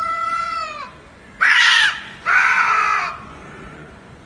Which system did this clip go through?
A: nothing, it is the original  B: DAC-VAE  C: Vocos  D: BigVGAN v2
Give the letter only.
C